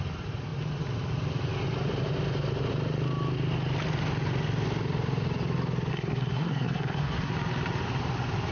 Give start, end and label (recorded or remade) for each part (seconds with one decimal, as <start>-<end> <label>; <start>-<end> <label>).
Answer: 0.0-5.9 recorded; 5.9-7.3 remade; 7.3-8.5 recorded